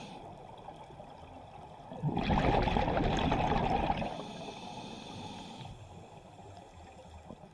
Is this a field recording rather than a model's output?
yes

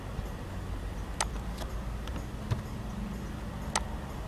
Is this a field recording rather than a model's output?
yes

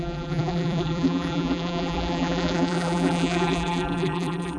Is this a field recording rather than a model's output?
no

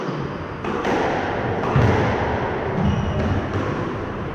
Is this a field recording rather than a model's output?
yes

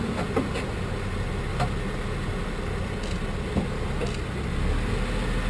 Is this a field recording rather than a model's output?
yes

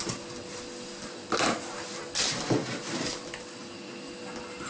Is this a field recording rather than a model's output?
yes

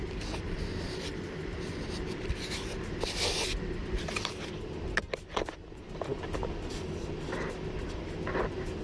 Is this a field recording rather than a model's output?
yes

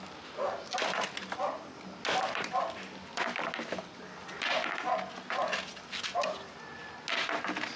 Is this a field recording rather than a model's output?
yes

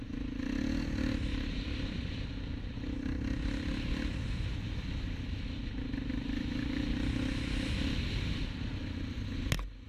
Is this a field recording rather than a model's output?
yes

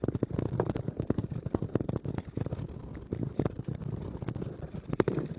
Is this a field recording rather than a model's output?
yes